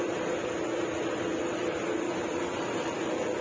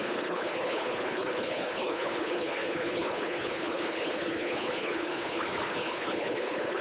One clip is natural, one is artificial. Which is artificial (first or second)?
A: second